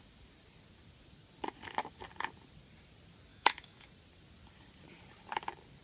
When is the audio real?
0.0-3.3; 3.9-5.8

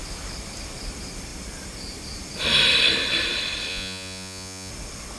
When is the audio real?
0.0-3.7; 4.7-5.2

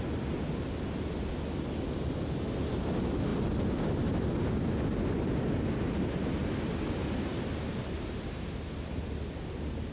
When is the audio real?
0.0-9.9